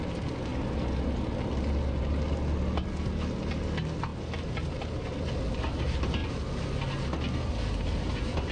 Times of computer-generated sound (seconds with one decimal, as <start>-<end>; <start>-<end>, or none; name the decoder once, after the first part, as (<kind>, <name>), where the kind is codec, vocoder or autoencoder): none